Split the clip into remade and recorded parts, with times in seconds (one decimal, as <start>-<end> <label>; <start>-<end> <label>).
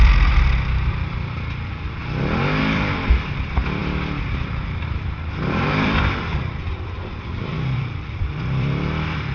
0.0-0.9 recorded; 0.9-2.0 remade; 2.0-2.6 recorded; 2.6-9.3 remade